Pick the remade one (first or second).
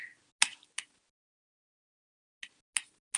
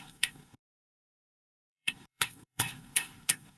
second